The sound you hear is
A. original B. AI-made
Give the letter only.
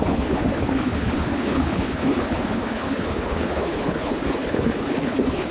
B